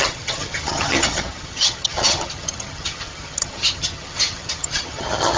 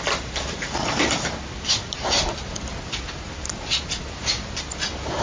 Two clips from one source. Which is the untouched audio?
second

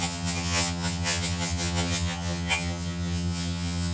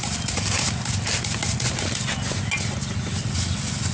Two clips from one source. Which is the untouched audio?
second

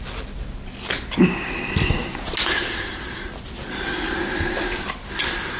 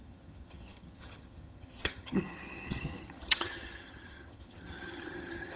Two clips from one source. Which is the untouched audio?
first